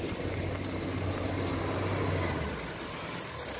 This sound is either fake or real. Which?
real